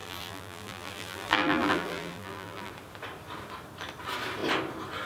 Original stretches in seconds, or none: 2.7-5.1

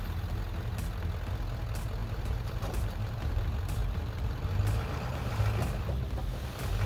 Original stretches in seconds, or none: 0.0-2.0; 3.4-3.8; 5.4-6.9

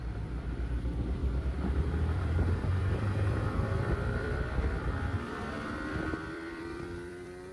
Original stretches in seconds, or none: none

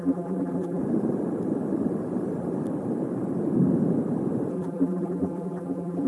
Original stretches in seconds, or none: 0.8-4.5

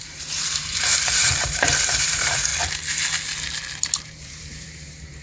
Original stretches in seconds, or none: 2.5-4.1

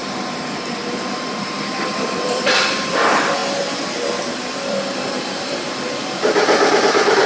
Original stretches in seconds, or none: 0.0-1.4; 3.4-4.2